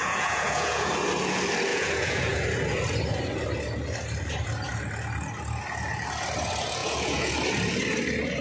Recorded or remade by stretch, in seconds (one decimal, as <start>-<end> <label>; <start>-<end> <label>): 0.0-0.9 remade; 0.9-1.7 recorded; 1.7-2.4 remade; 2.4-6.8 recorded; 6.8-7.3 remade; 7.3-8.4 recorded